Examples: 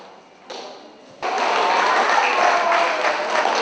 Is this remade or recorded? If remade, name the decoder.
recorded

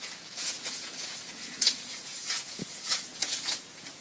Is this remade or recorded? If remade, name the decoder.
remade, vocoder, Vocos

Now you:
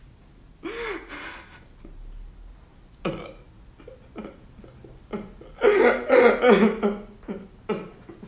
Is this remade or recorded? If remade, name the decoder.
recorded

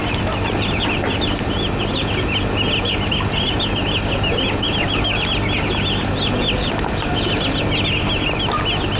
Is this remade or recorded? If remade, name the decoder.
recorded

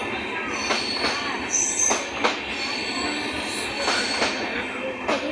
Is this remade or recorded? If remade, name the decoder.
recorded